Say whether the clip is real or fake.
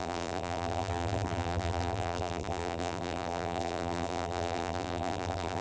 fake